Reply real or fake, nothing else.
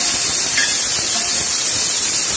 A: real